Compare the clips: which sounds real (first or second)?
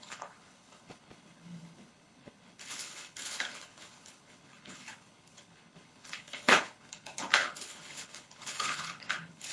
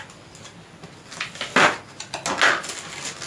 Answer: second